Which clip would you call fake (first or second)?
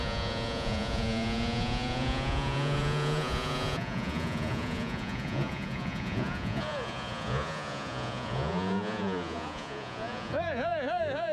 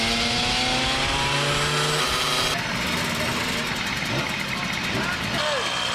first